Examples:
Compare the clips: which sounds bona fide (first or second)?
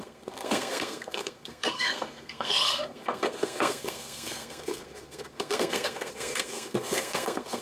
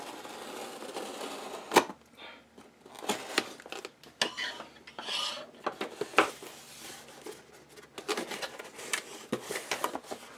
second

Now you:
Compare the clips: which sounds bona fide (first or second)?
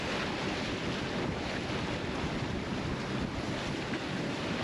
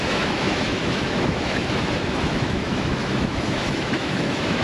first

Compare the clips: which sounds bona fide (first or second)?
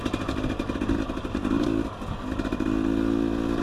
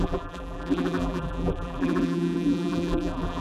first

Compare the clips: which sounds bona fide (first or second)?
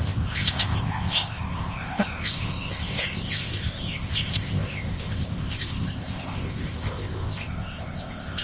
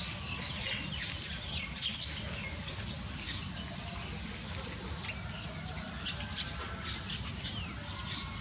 second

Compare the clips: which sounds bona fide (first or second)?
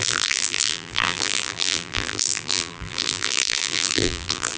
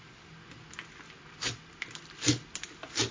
second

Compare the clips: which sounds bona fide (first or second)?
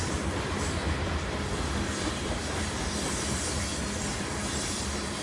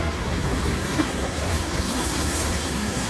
first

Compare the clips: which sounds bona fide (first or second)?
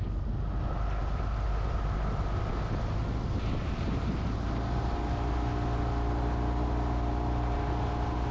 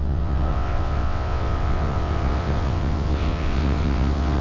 first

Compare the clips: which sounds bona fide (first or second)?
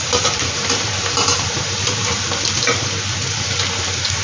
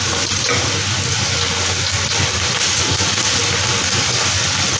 second